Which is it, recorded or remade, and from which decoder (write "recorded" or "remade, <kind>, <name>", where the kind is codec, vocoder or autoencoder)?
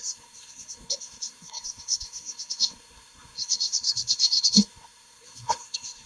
remade, codec, SNAC